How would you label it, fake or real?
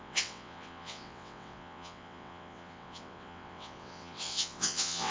fake